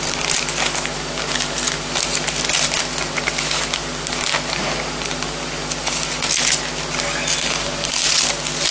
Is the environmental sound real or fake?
real